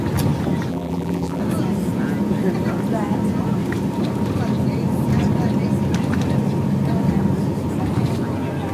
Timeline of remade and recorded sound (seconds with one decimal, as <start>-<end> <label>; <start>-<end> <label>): 0.0-0.7 recorded; 0.7-1.4 remade; 1.4-8.7 recorded